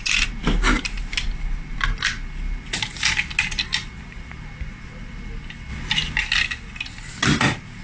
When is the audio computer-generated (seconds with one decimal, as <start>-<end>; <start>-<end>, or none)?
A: none